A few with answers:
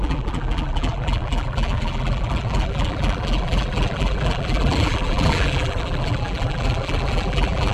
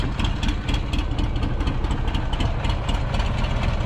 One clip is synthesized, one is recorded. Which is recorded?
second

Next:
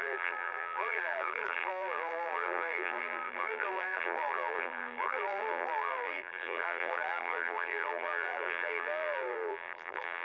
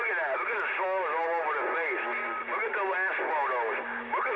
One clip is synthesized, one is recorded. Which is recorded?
second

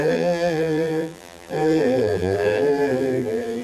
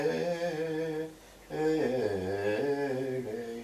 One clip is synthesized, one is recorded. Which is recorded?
second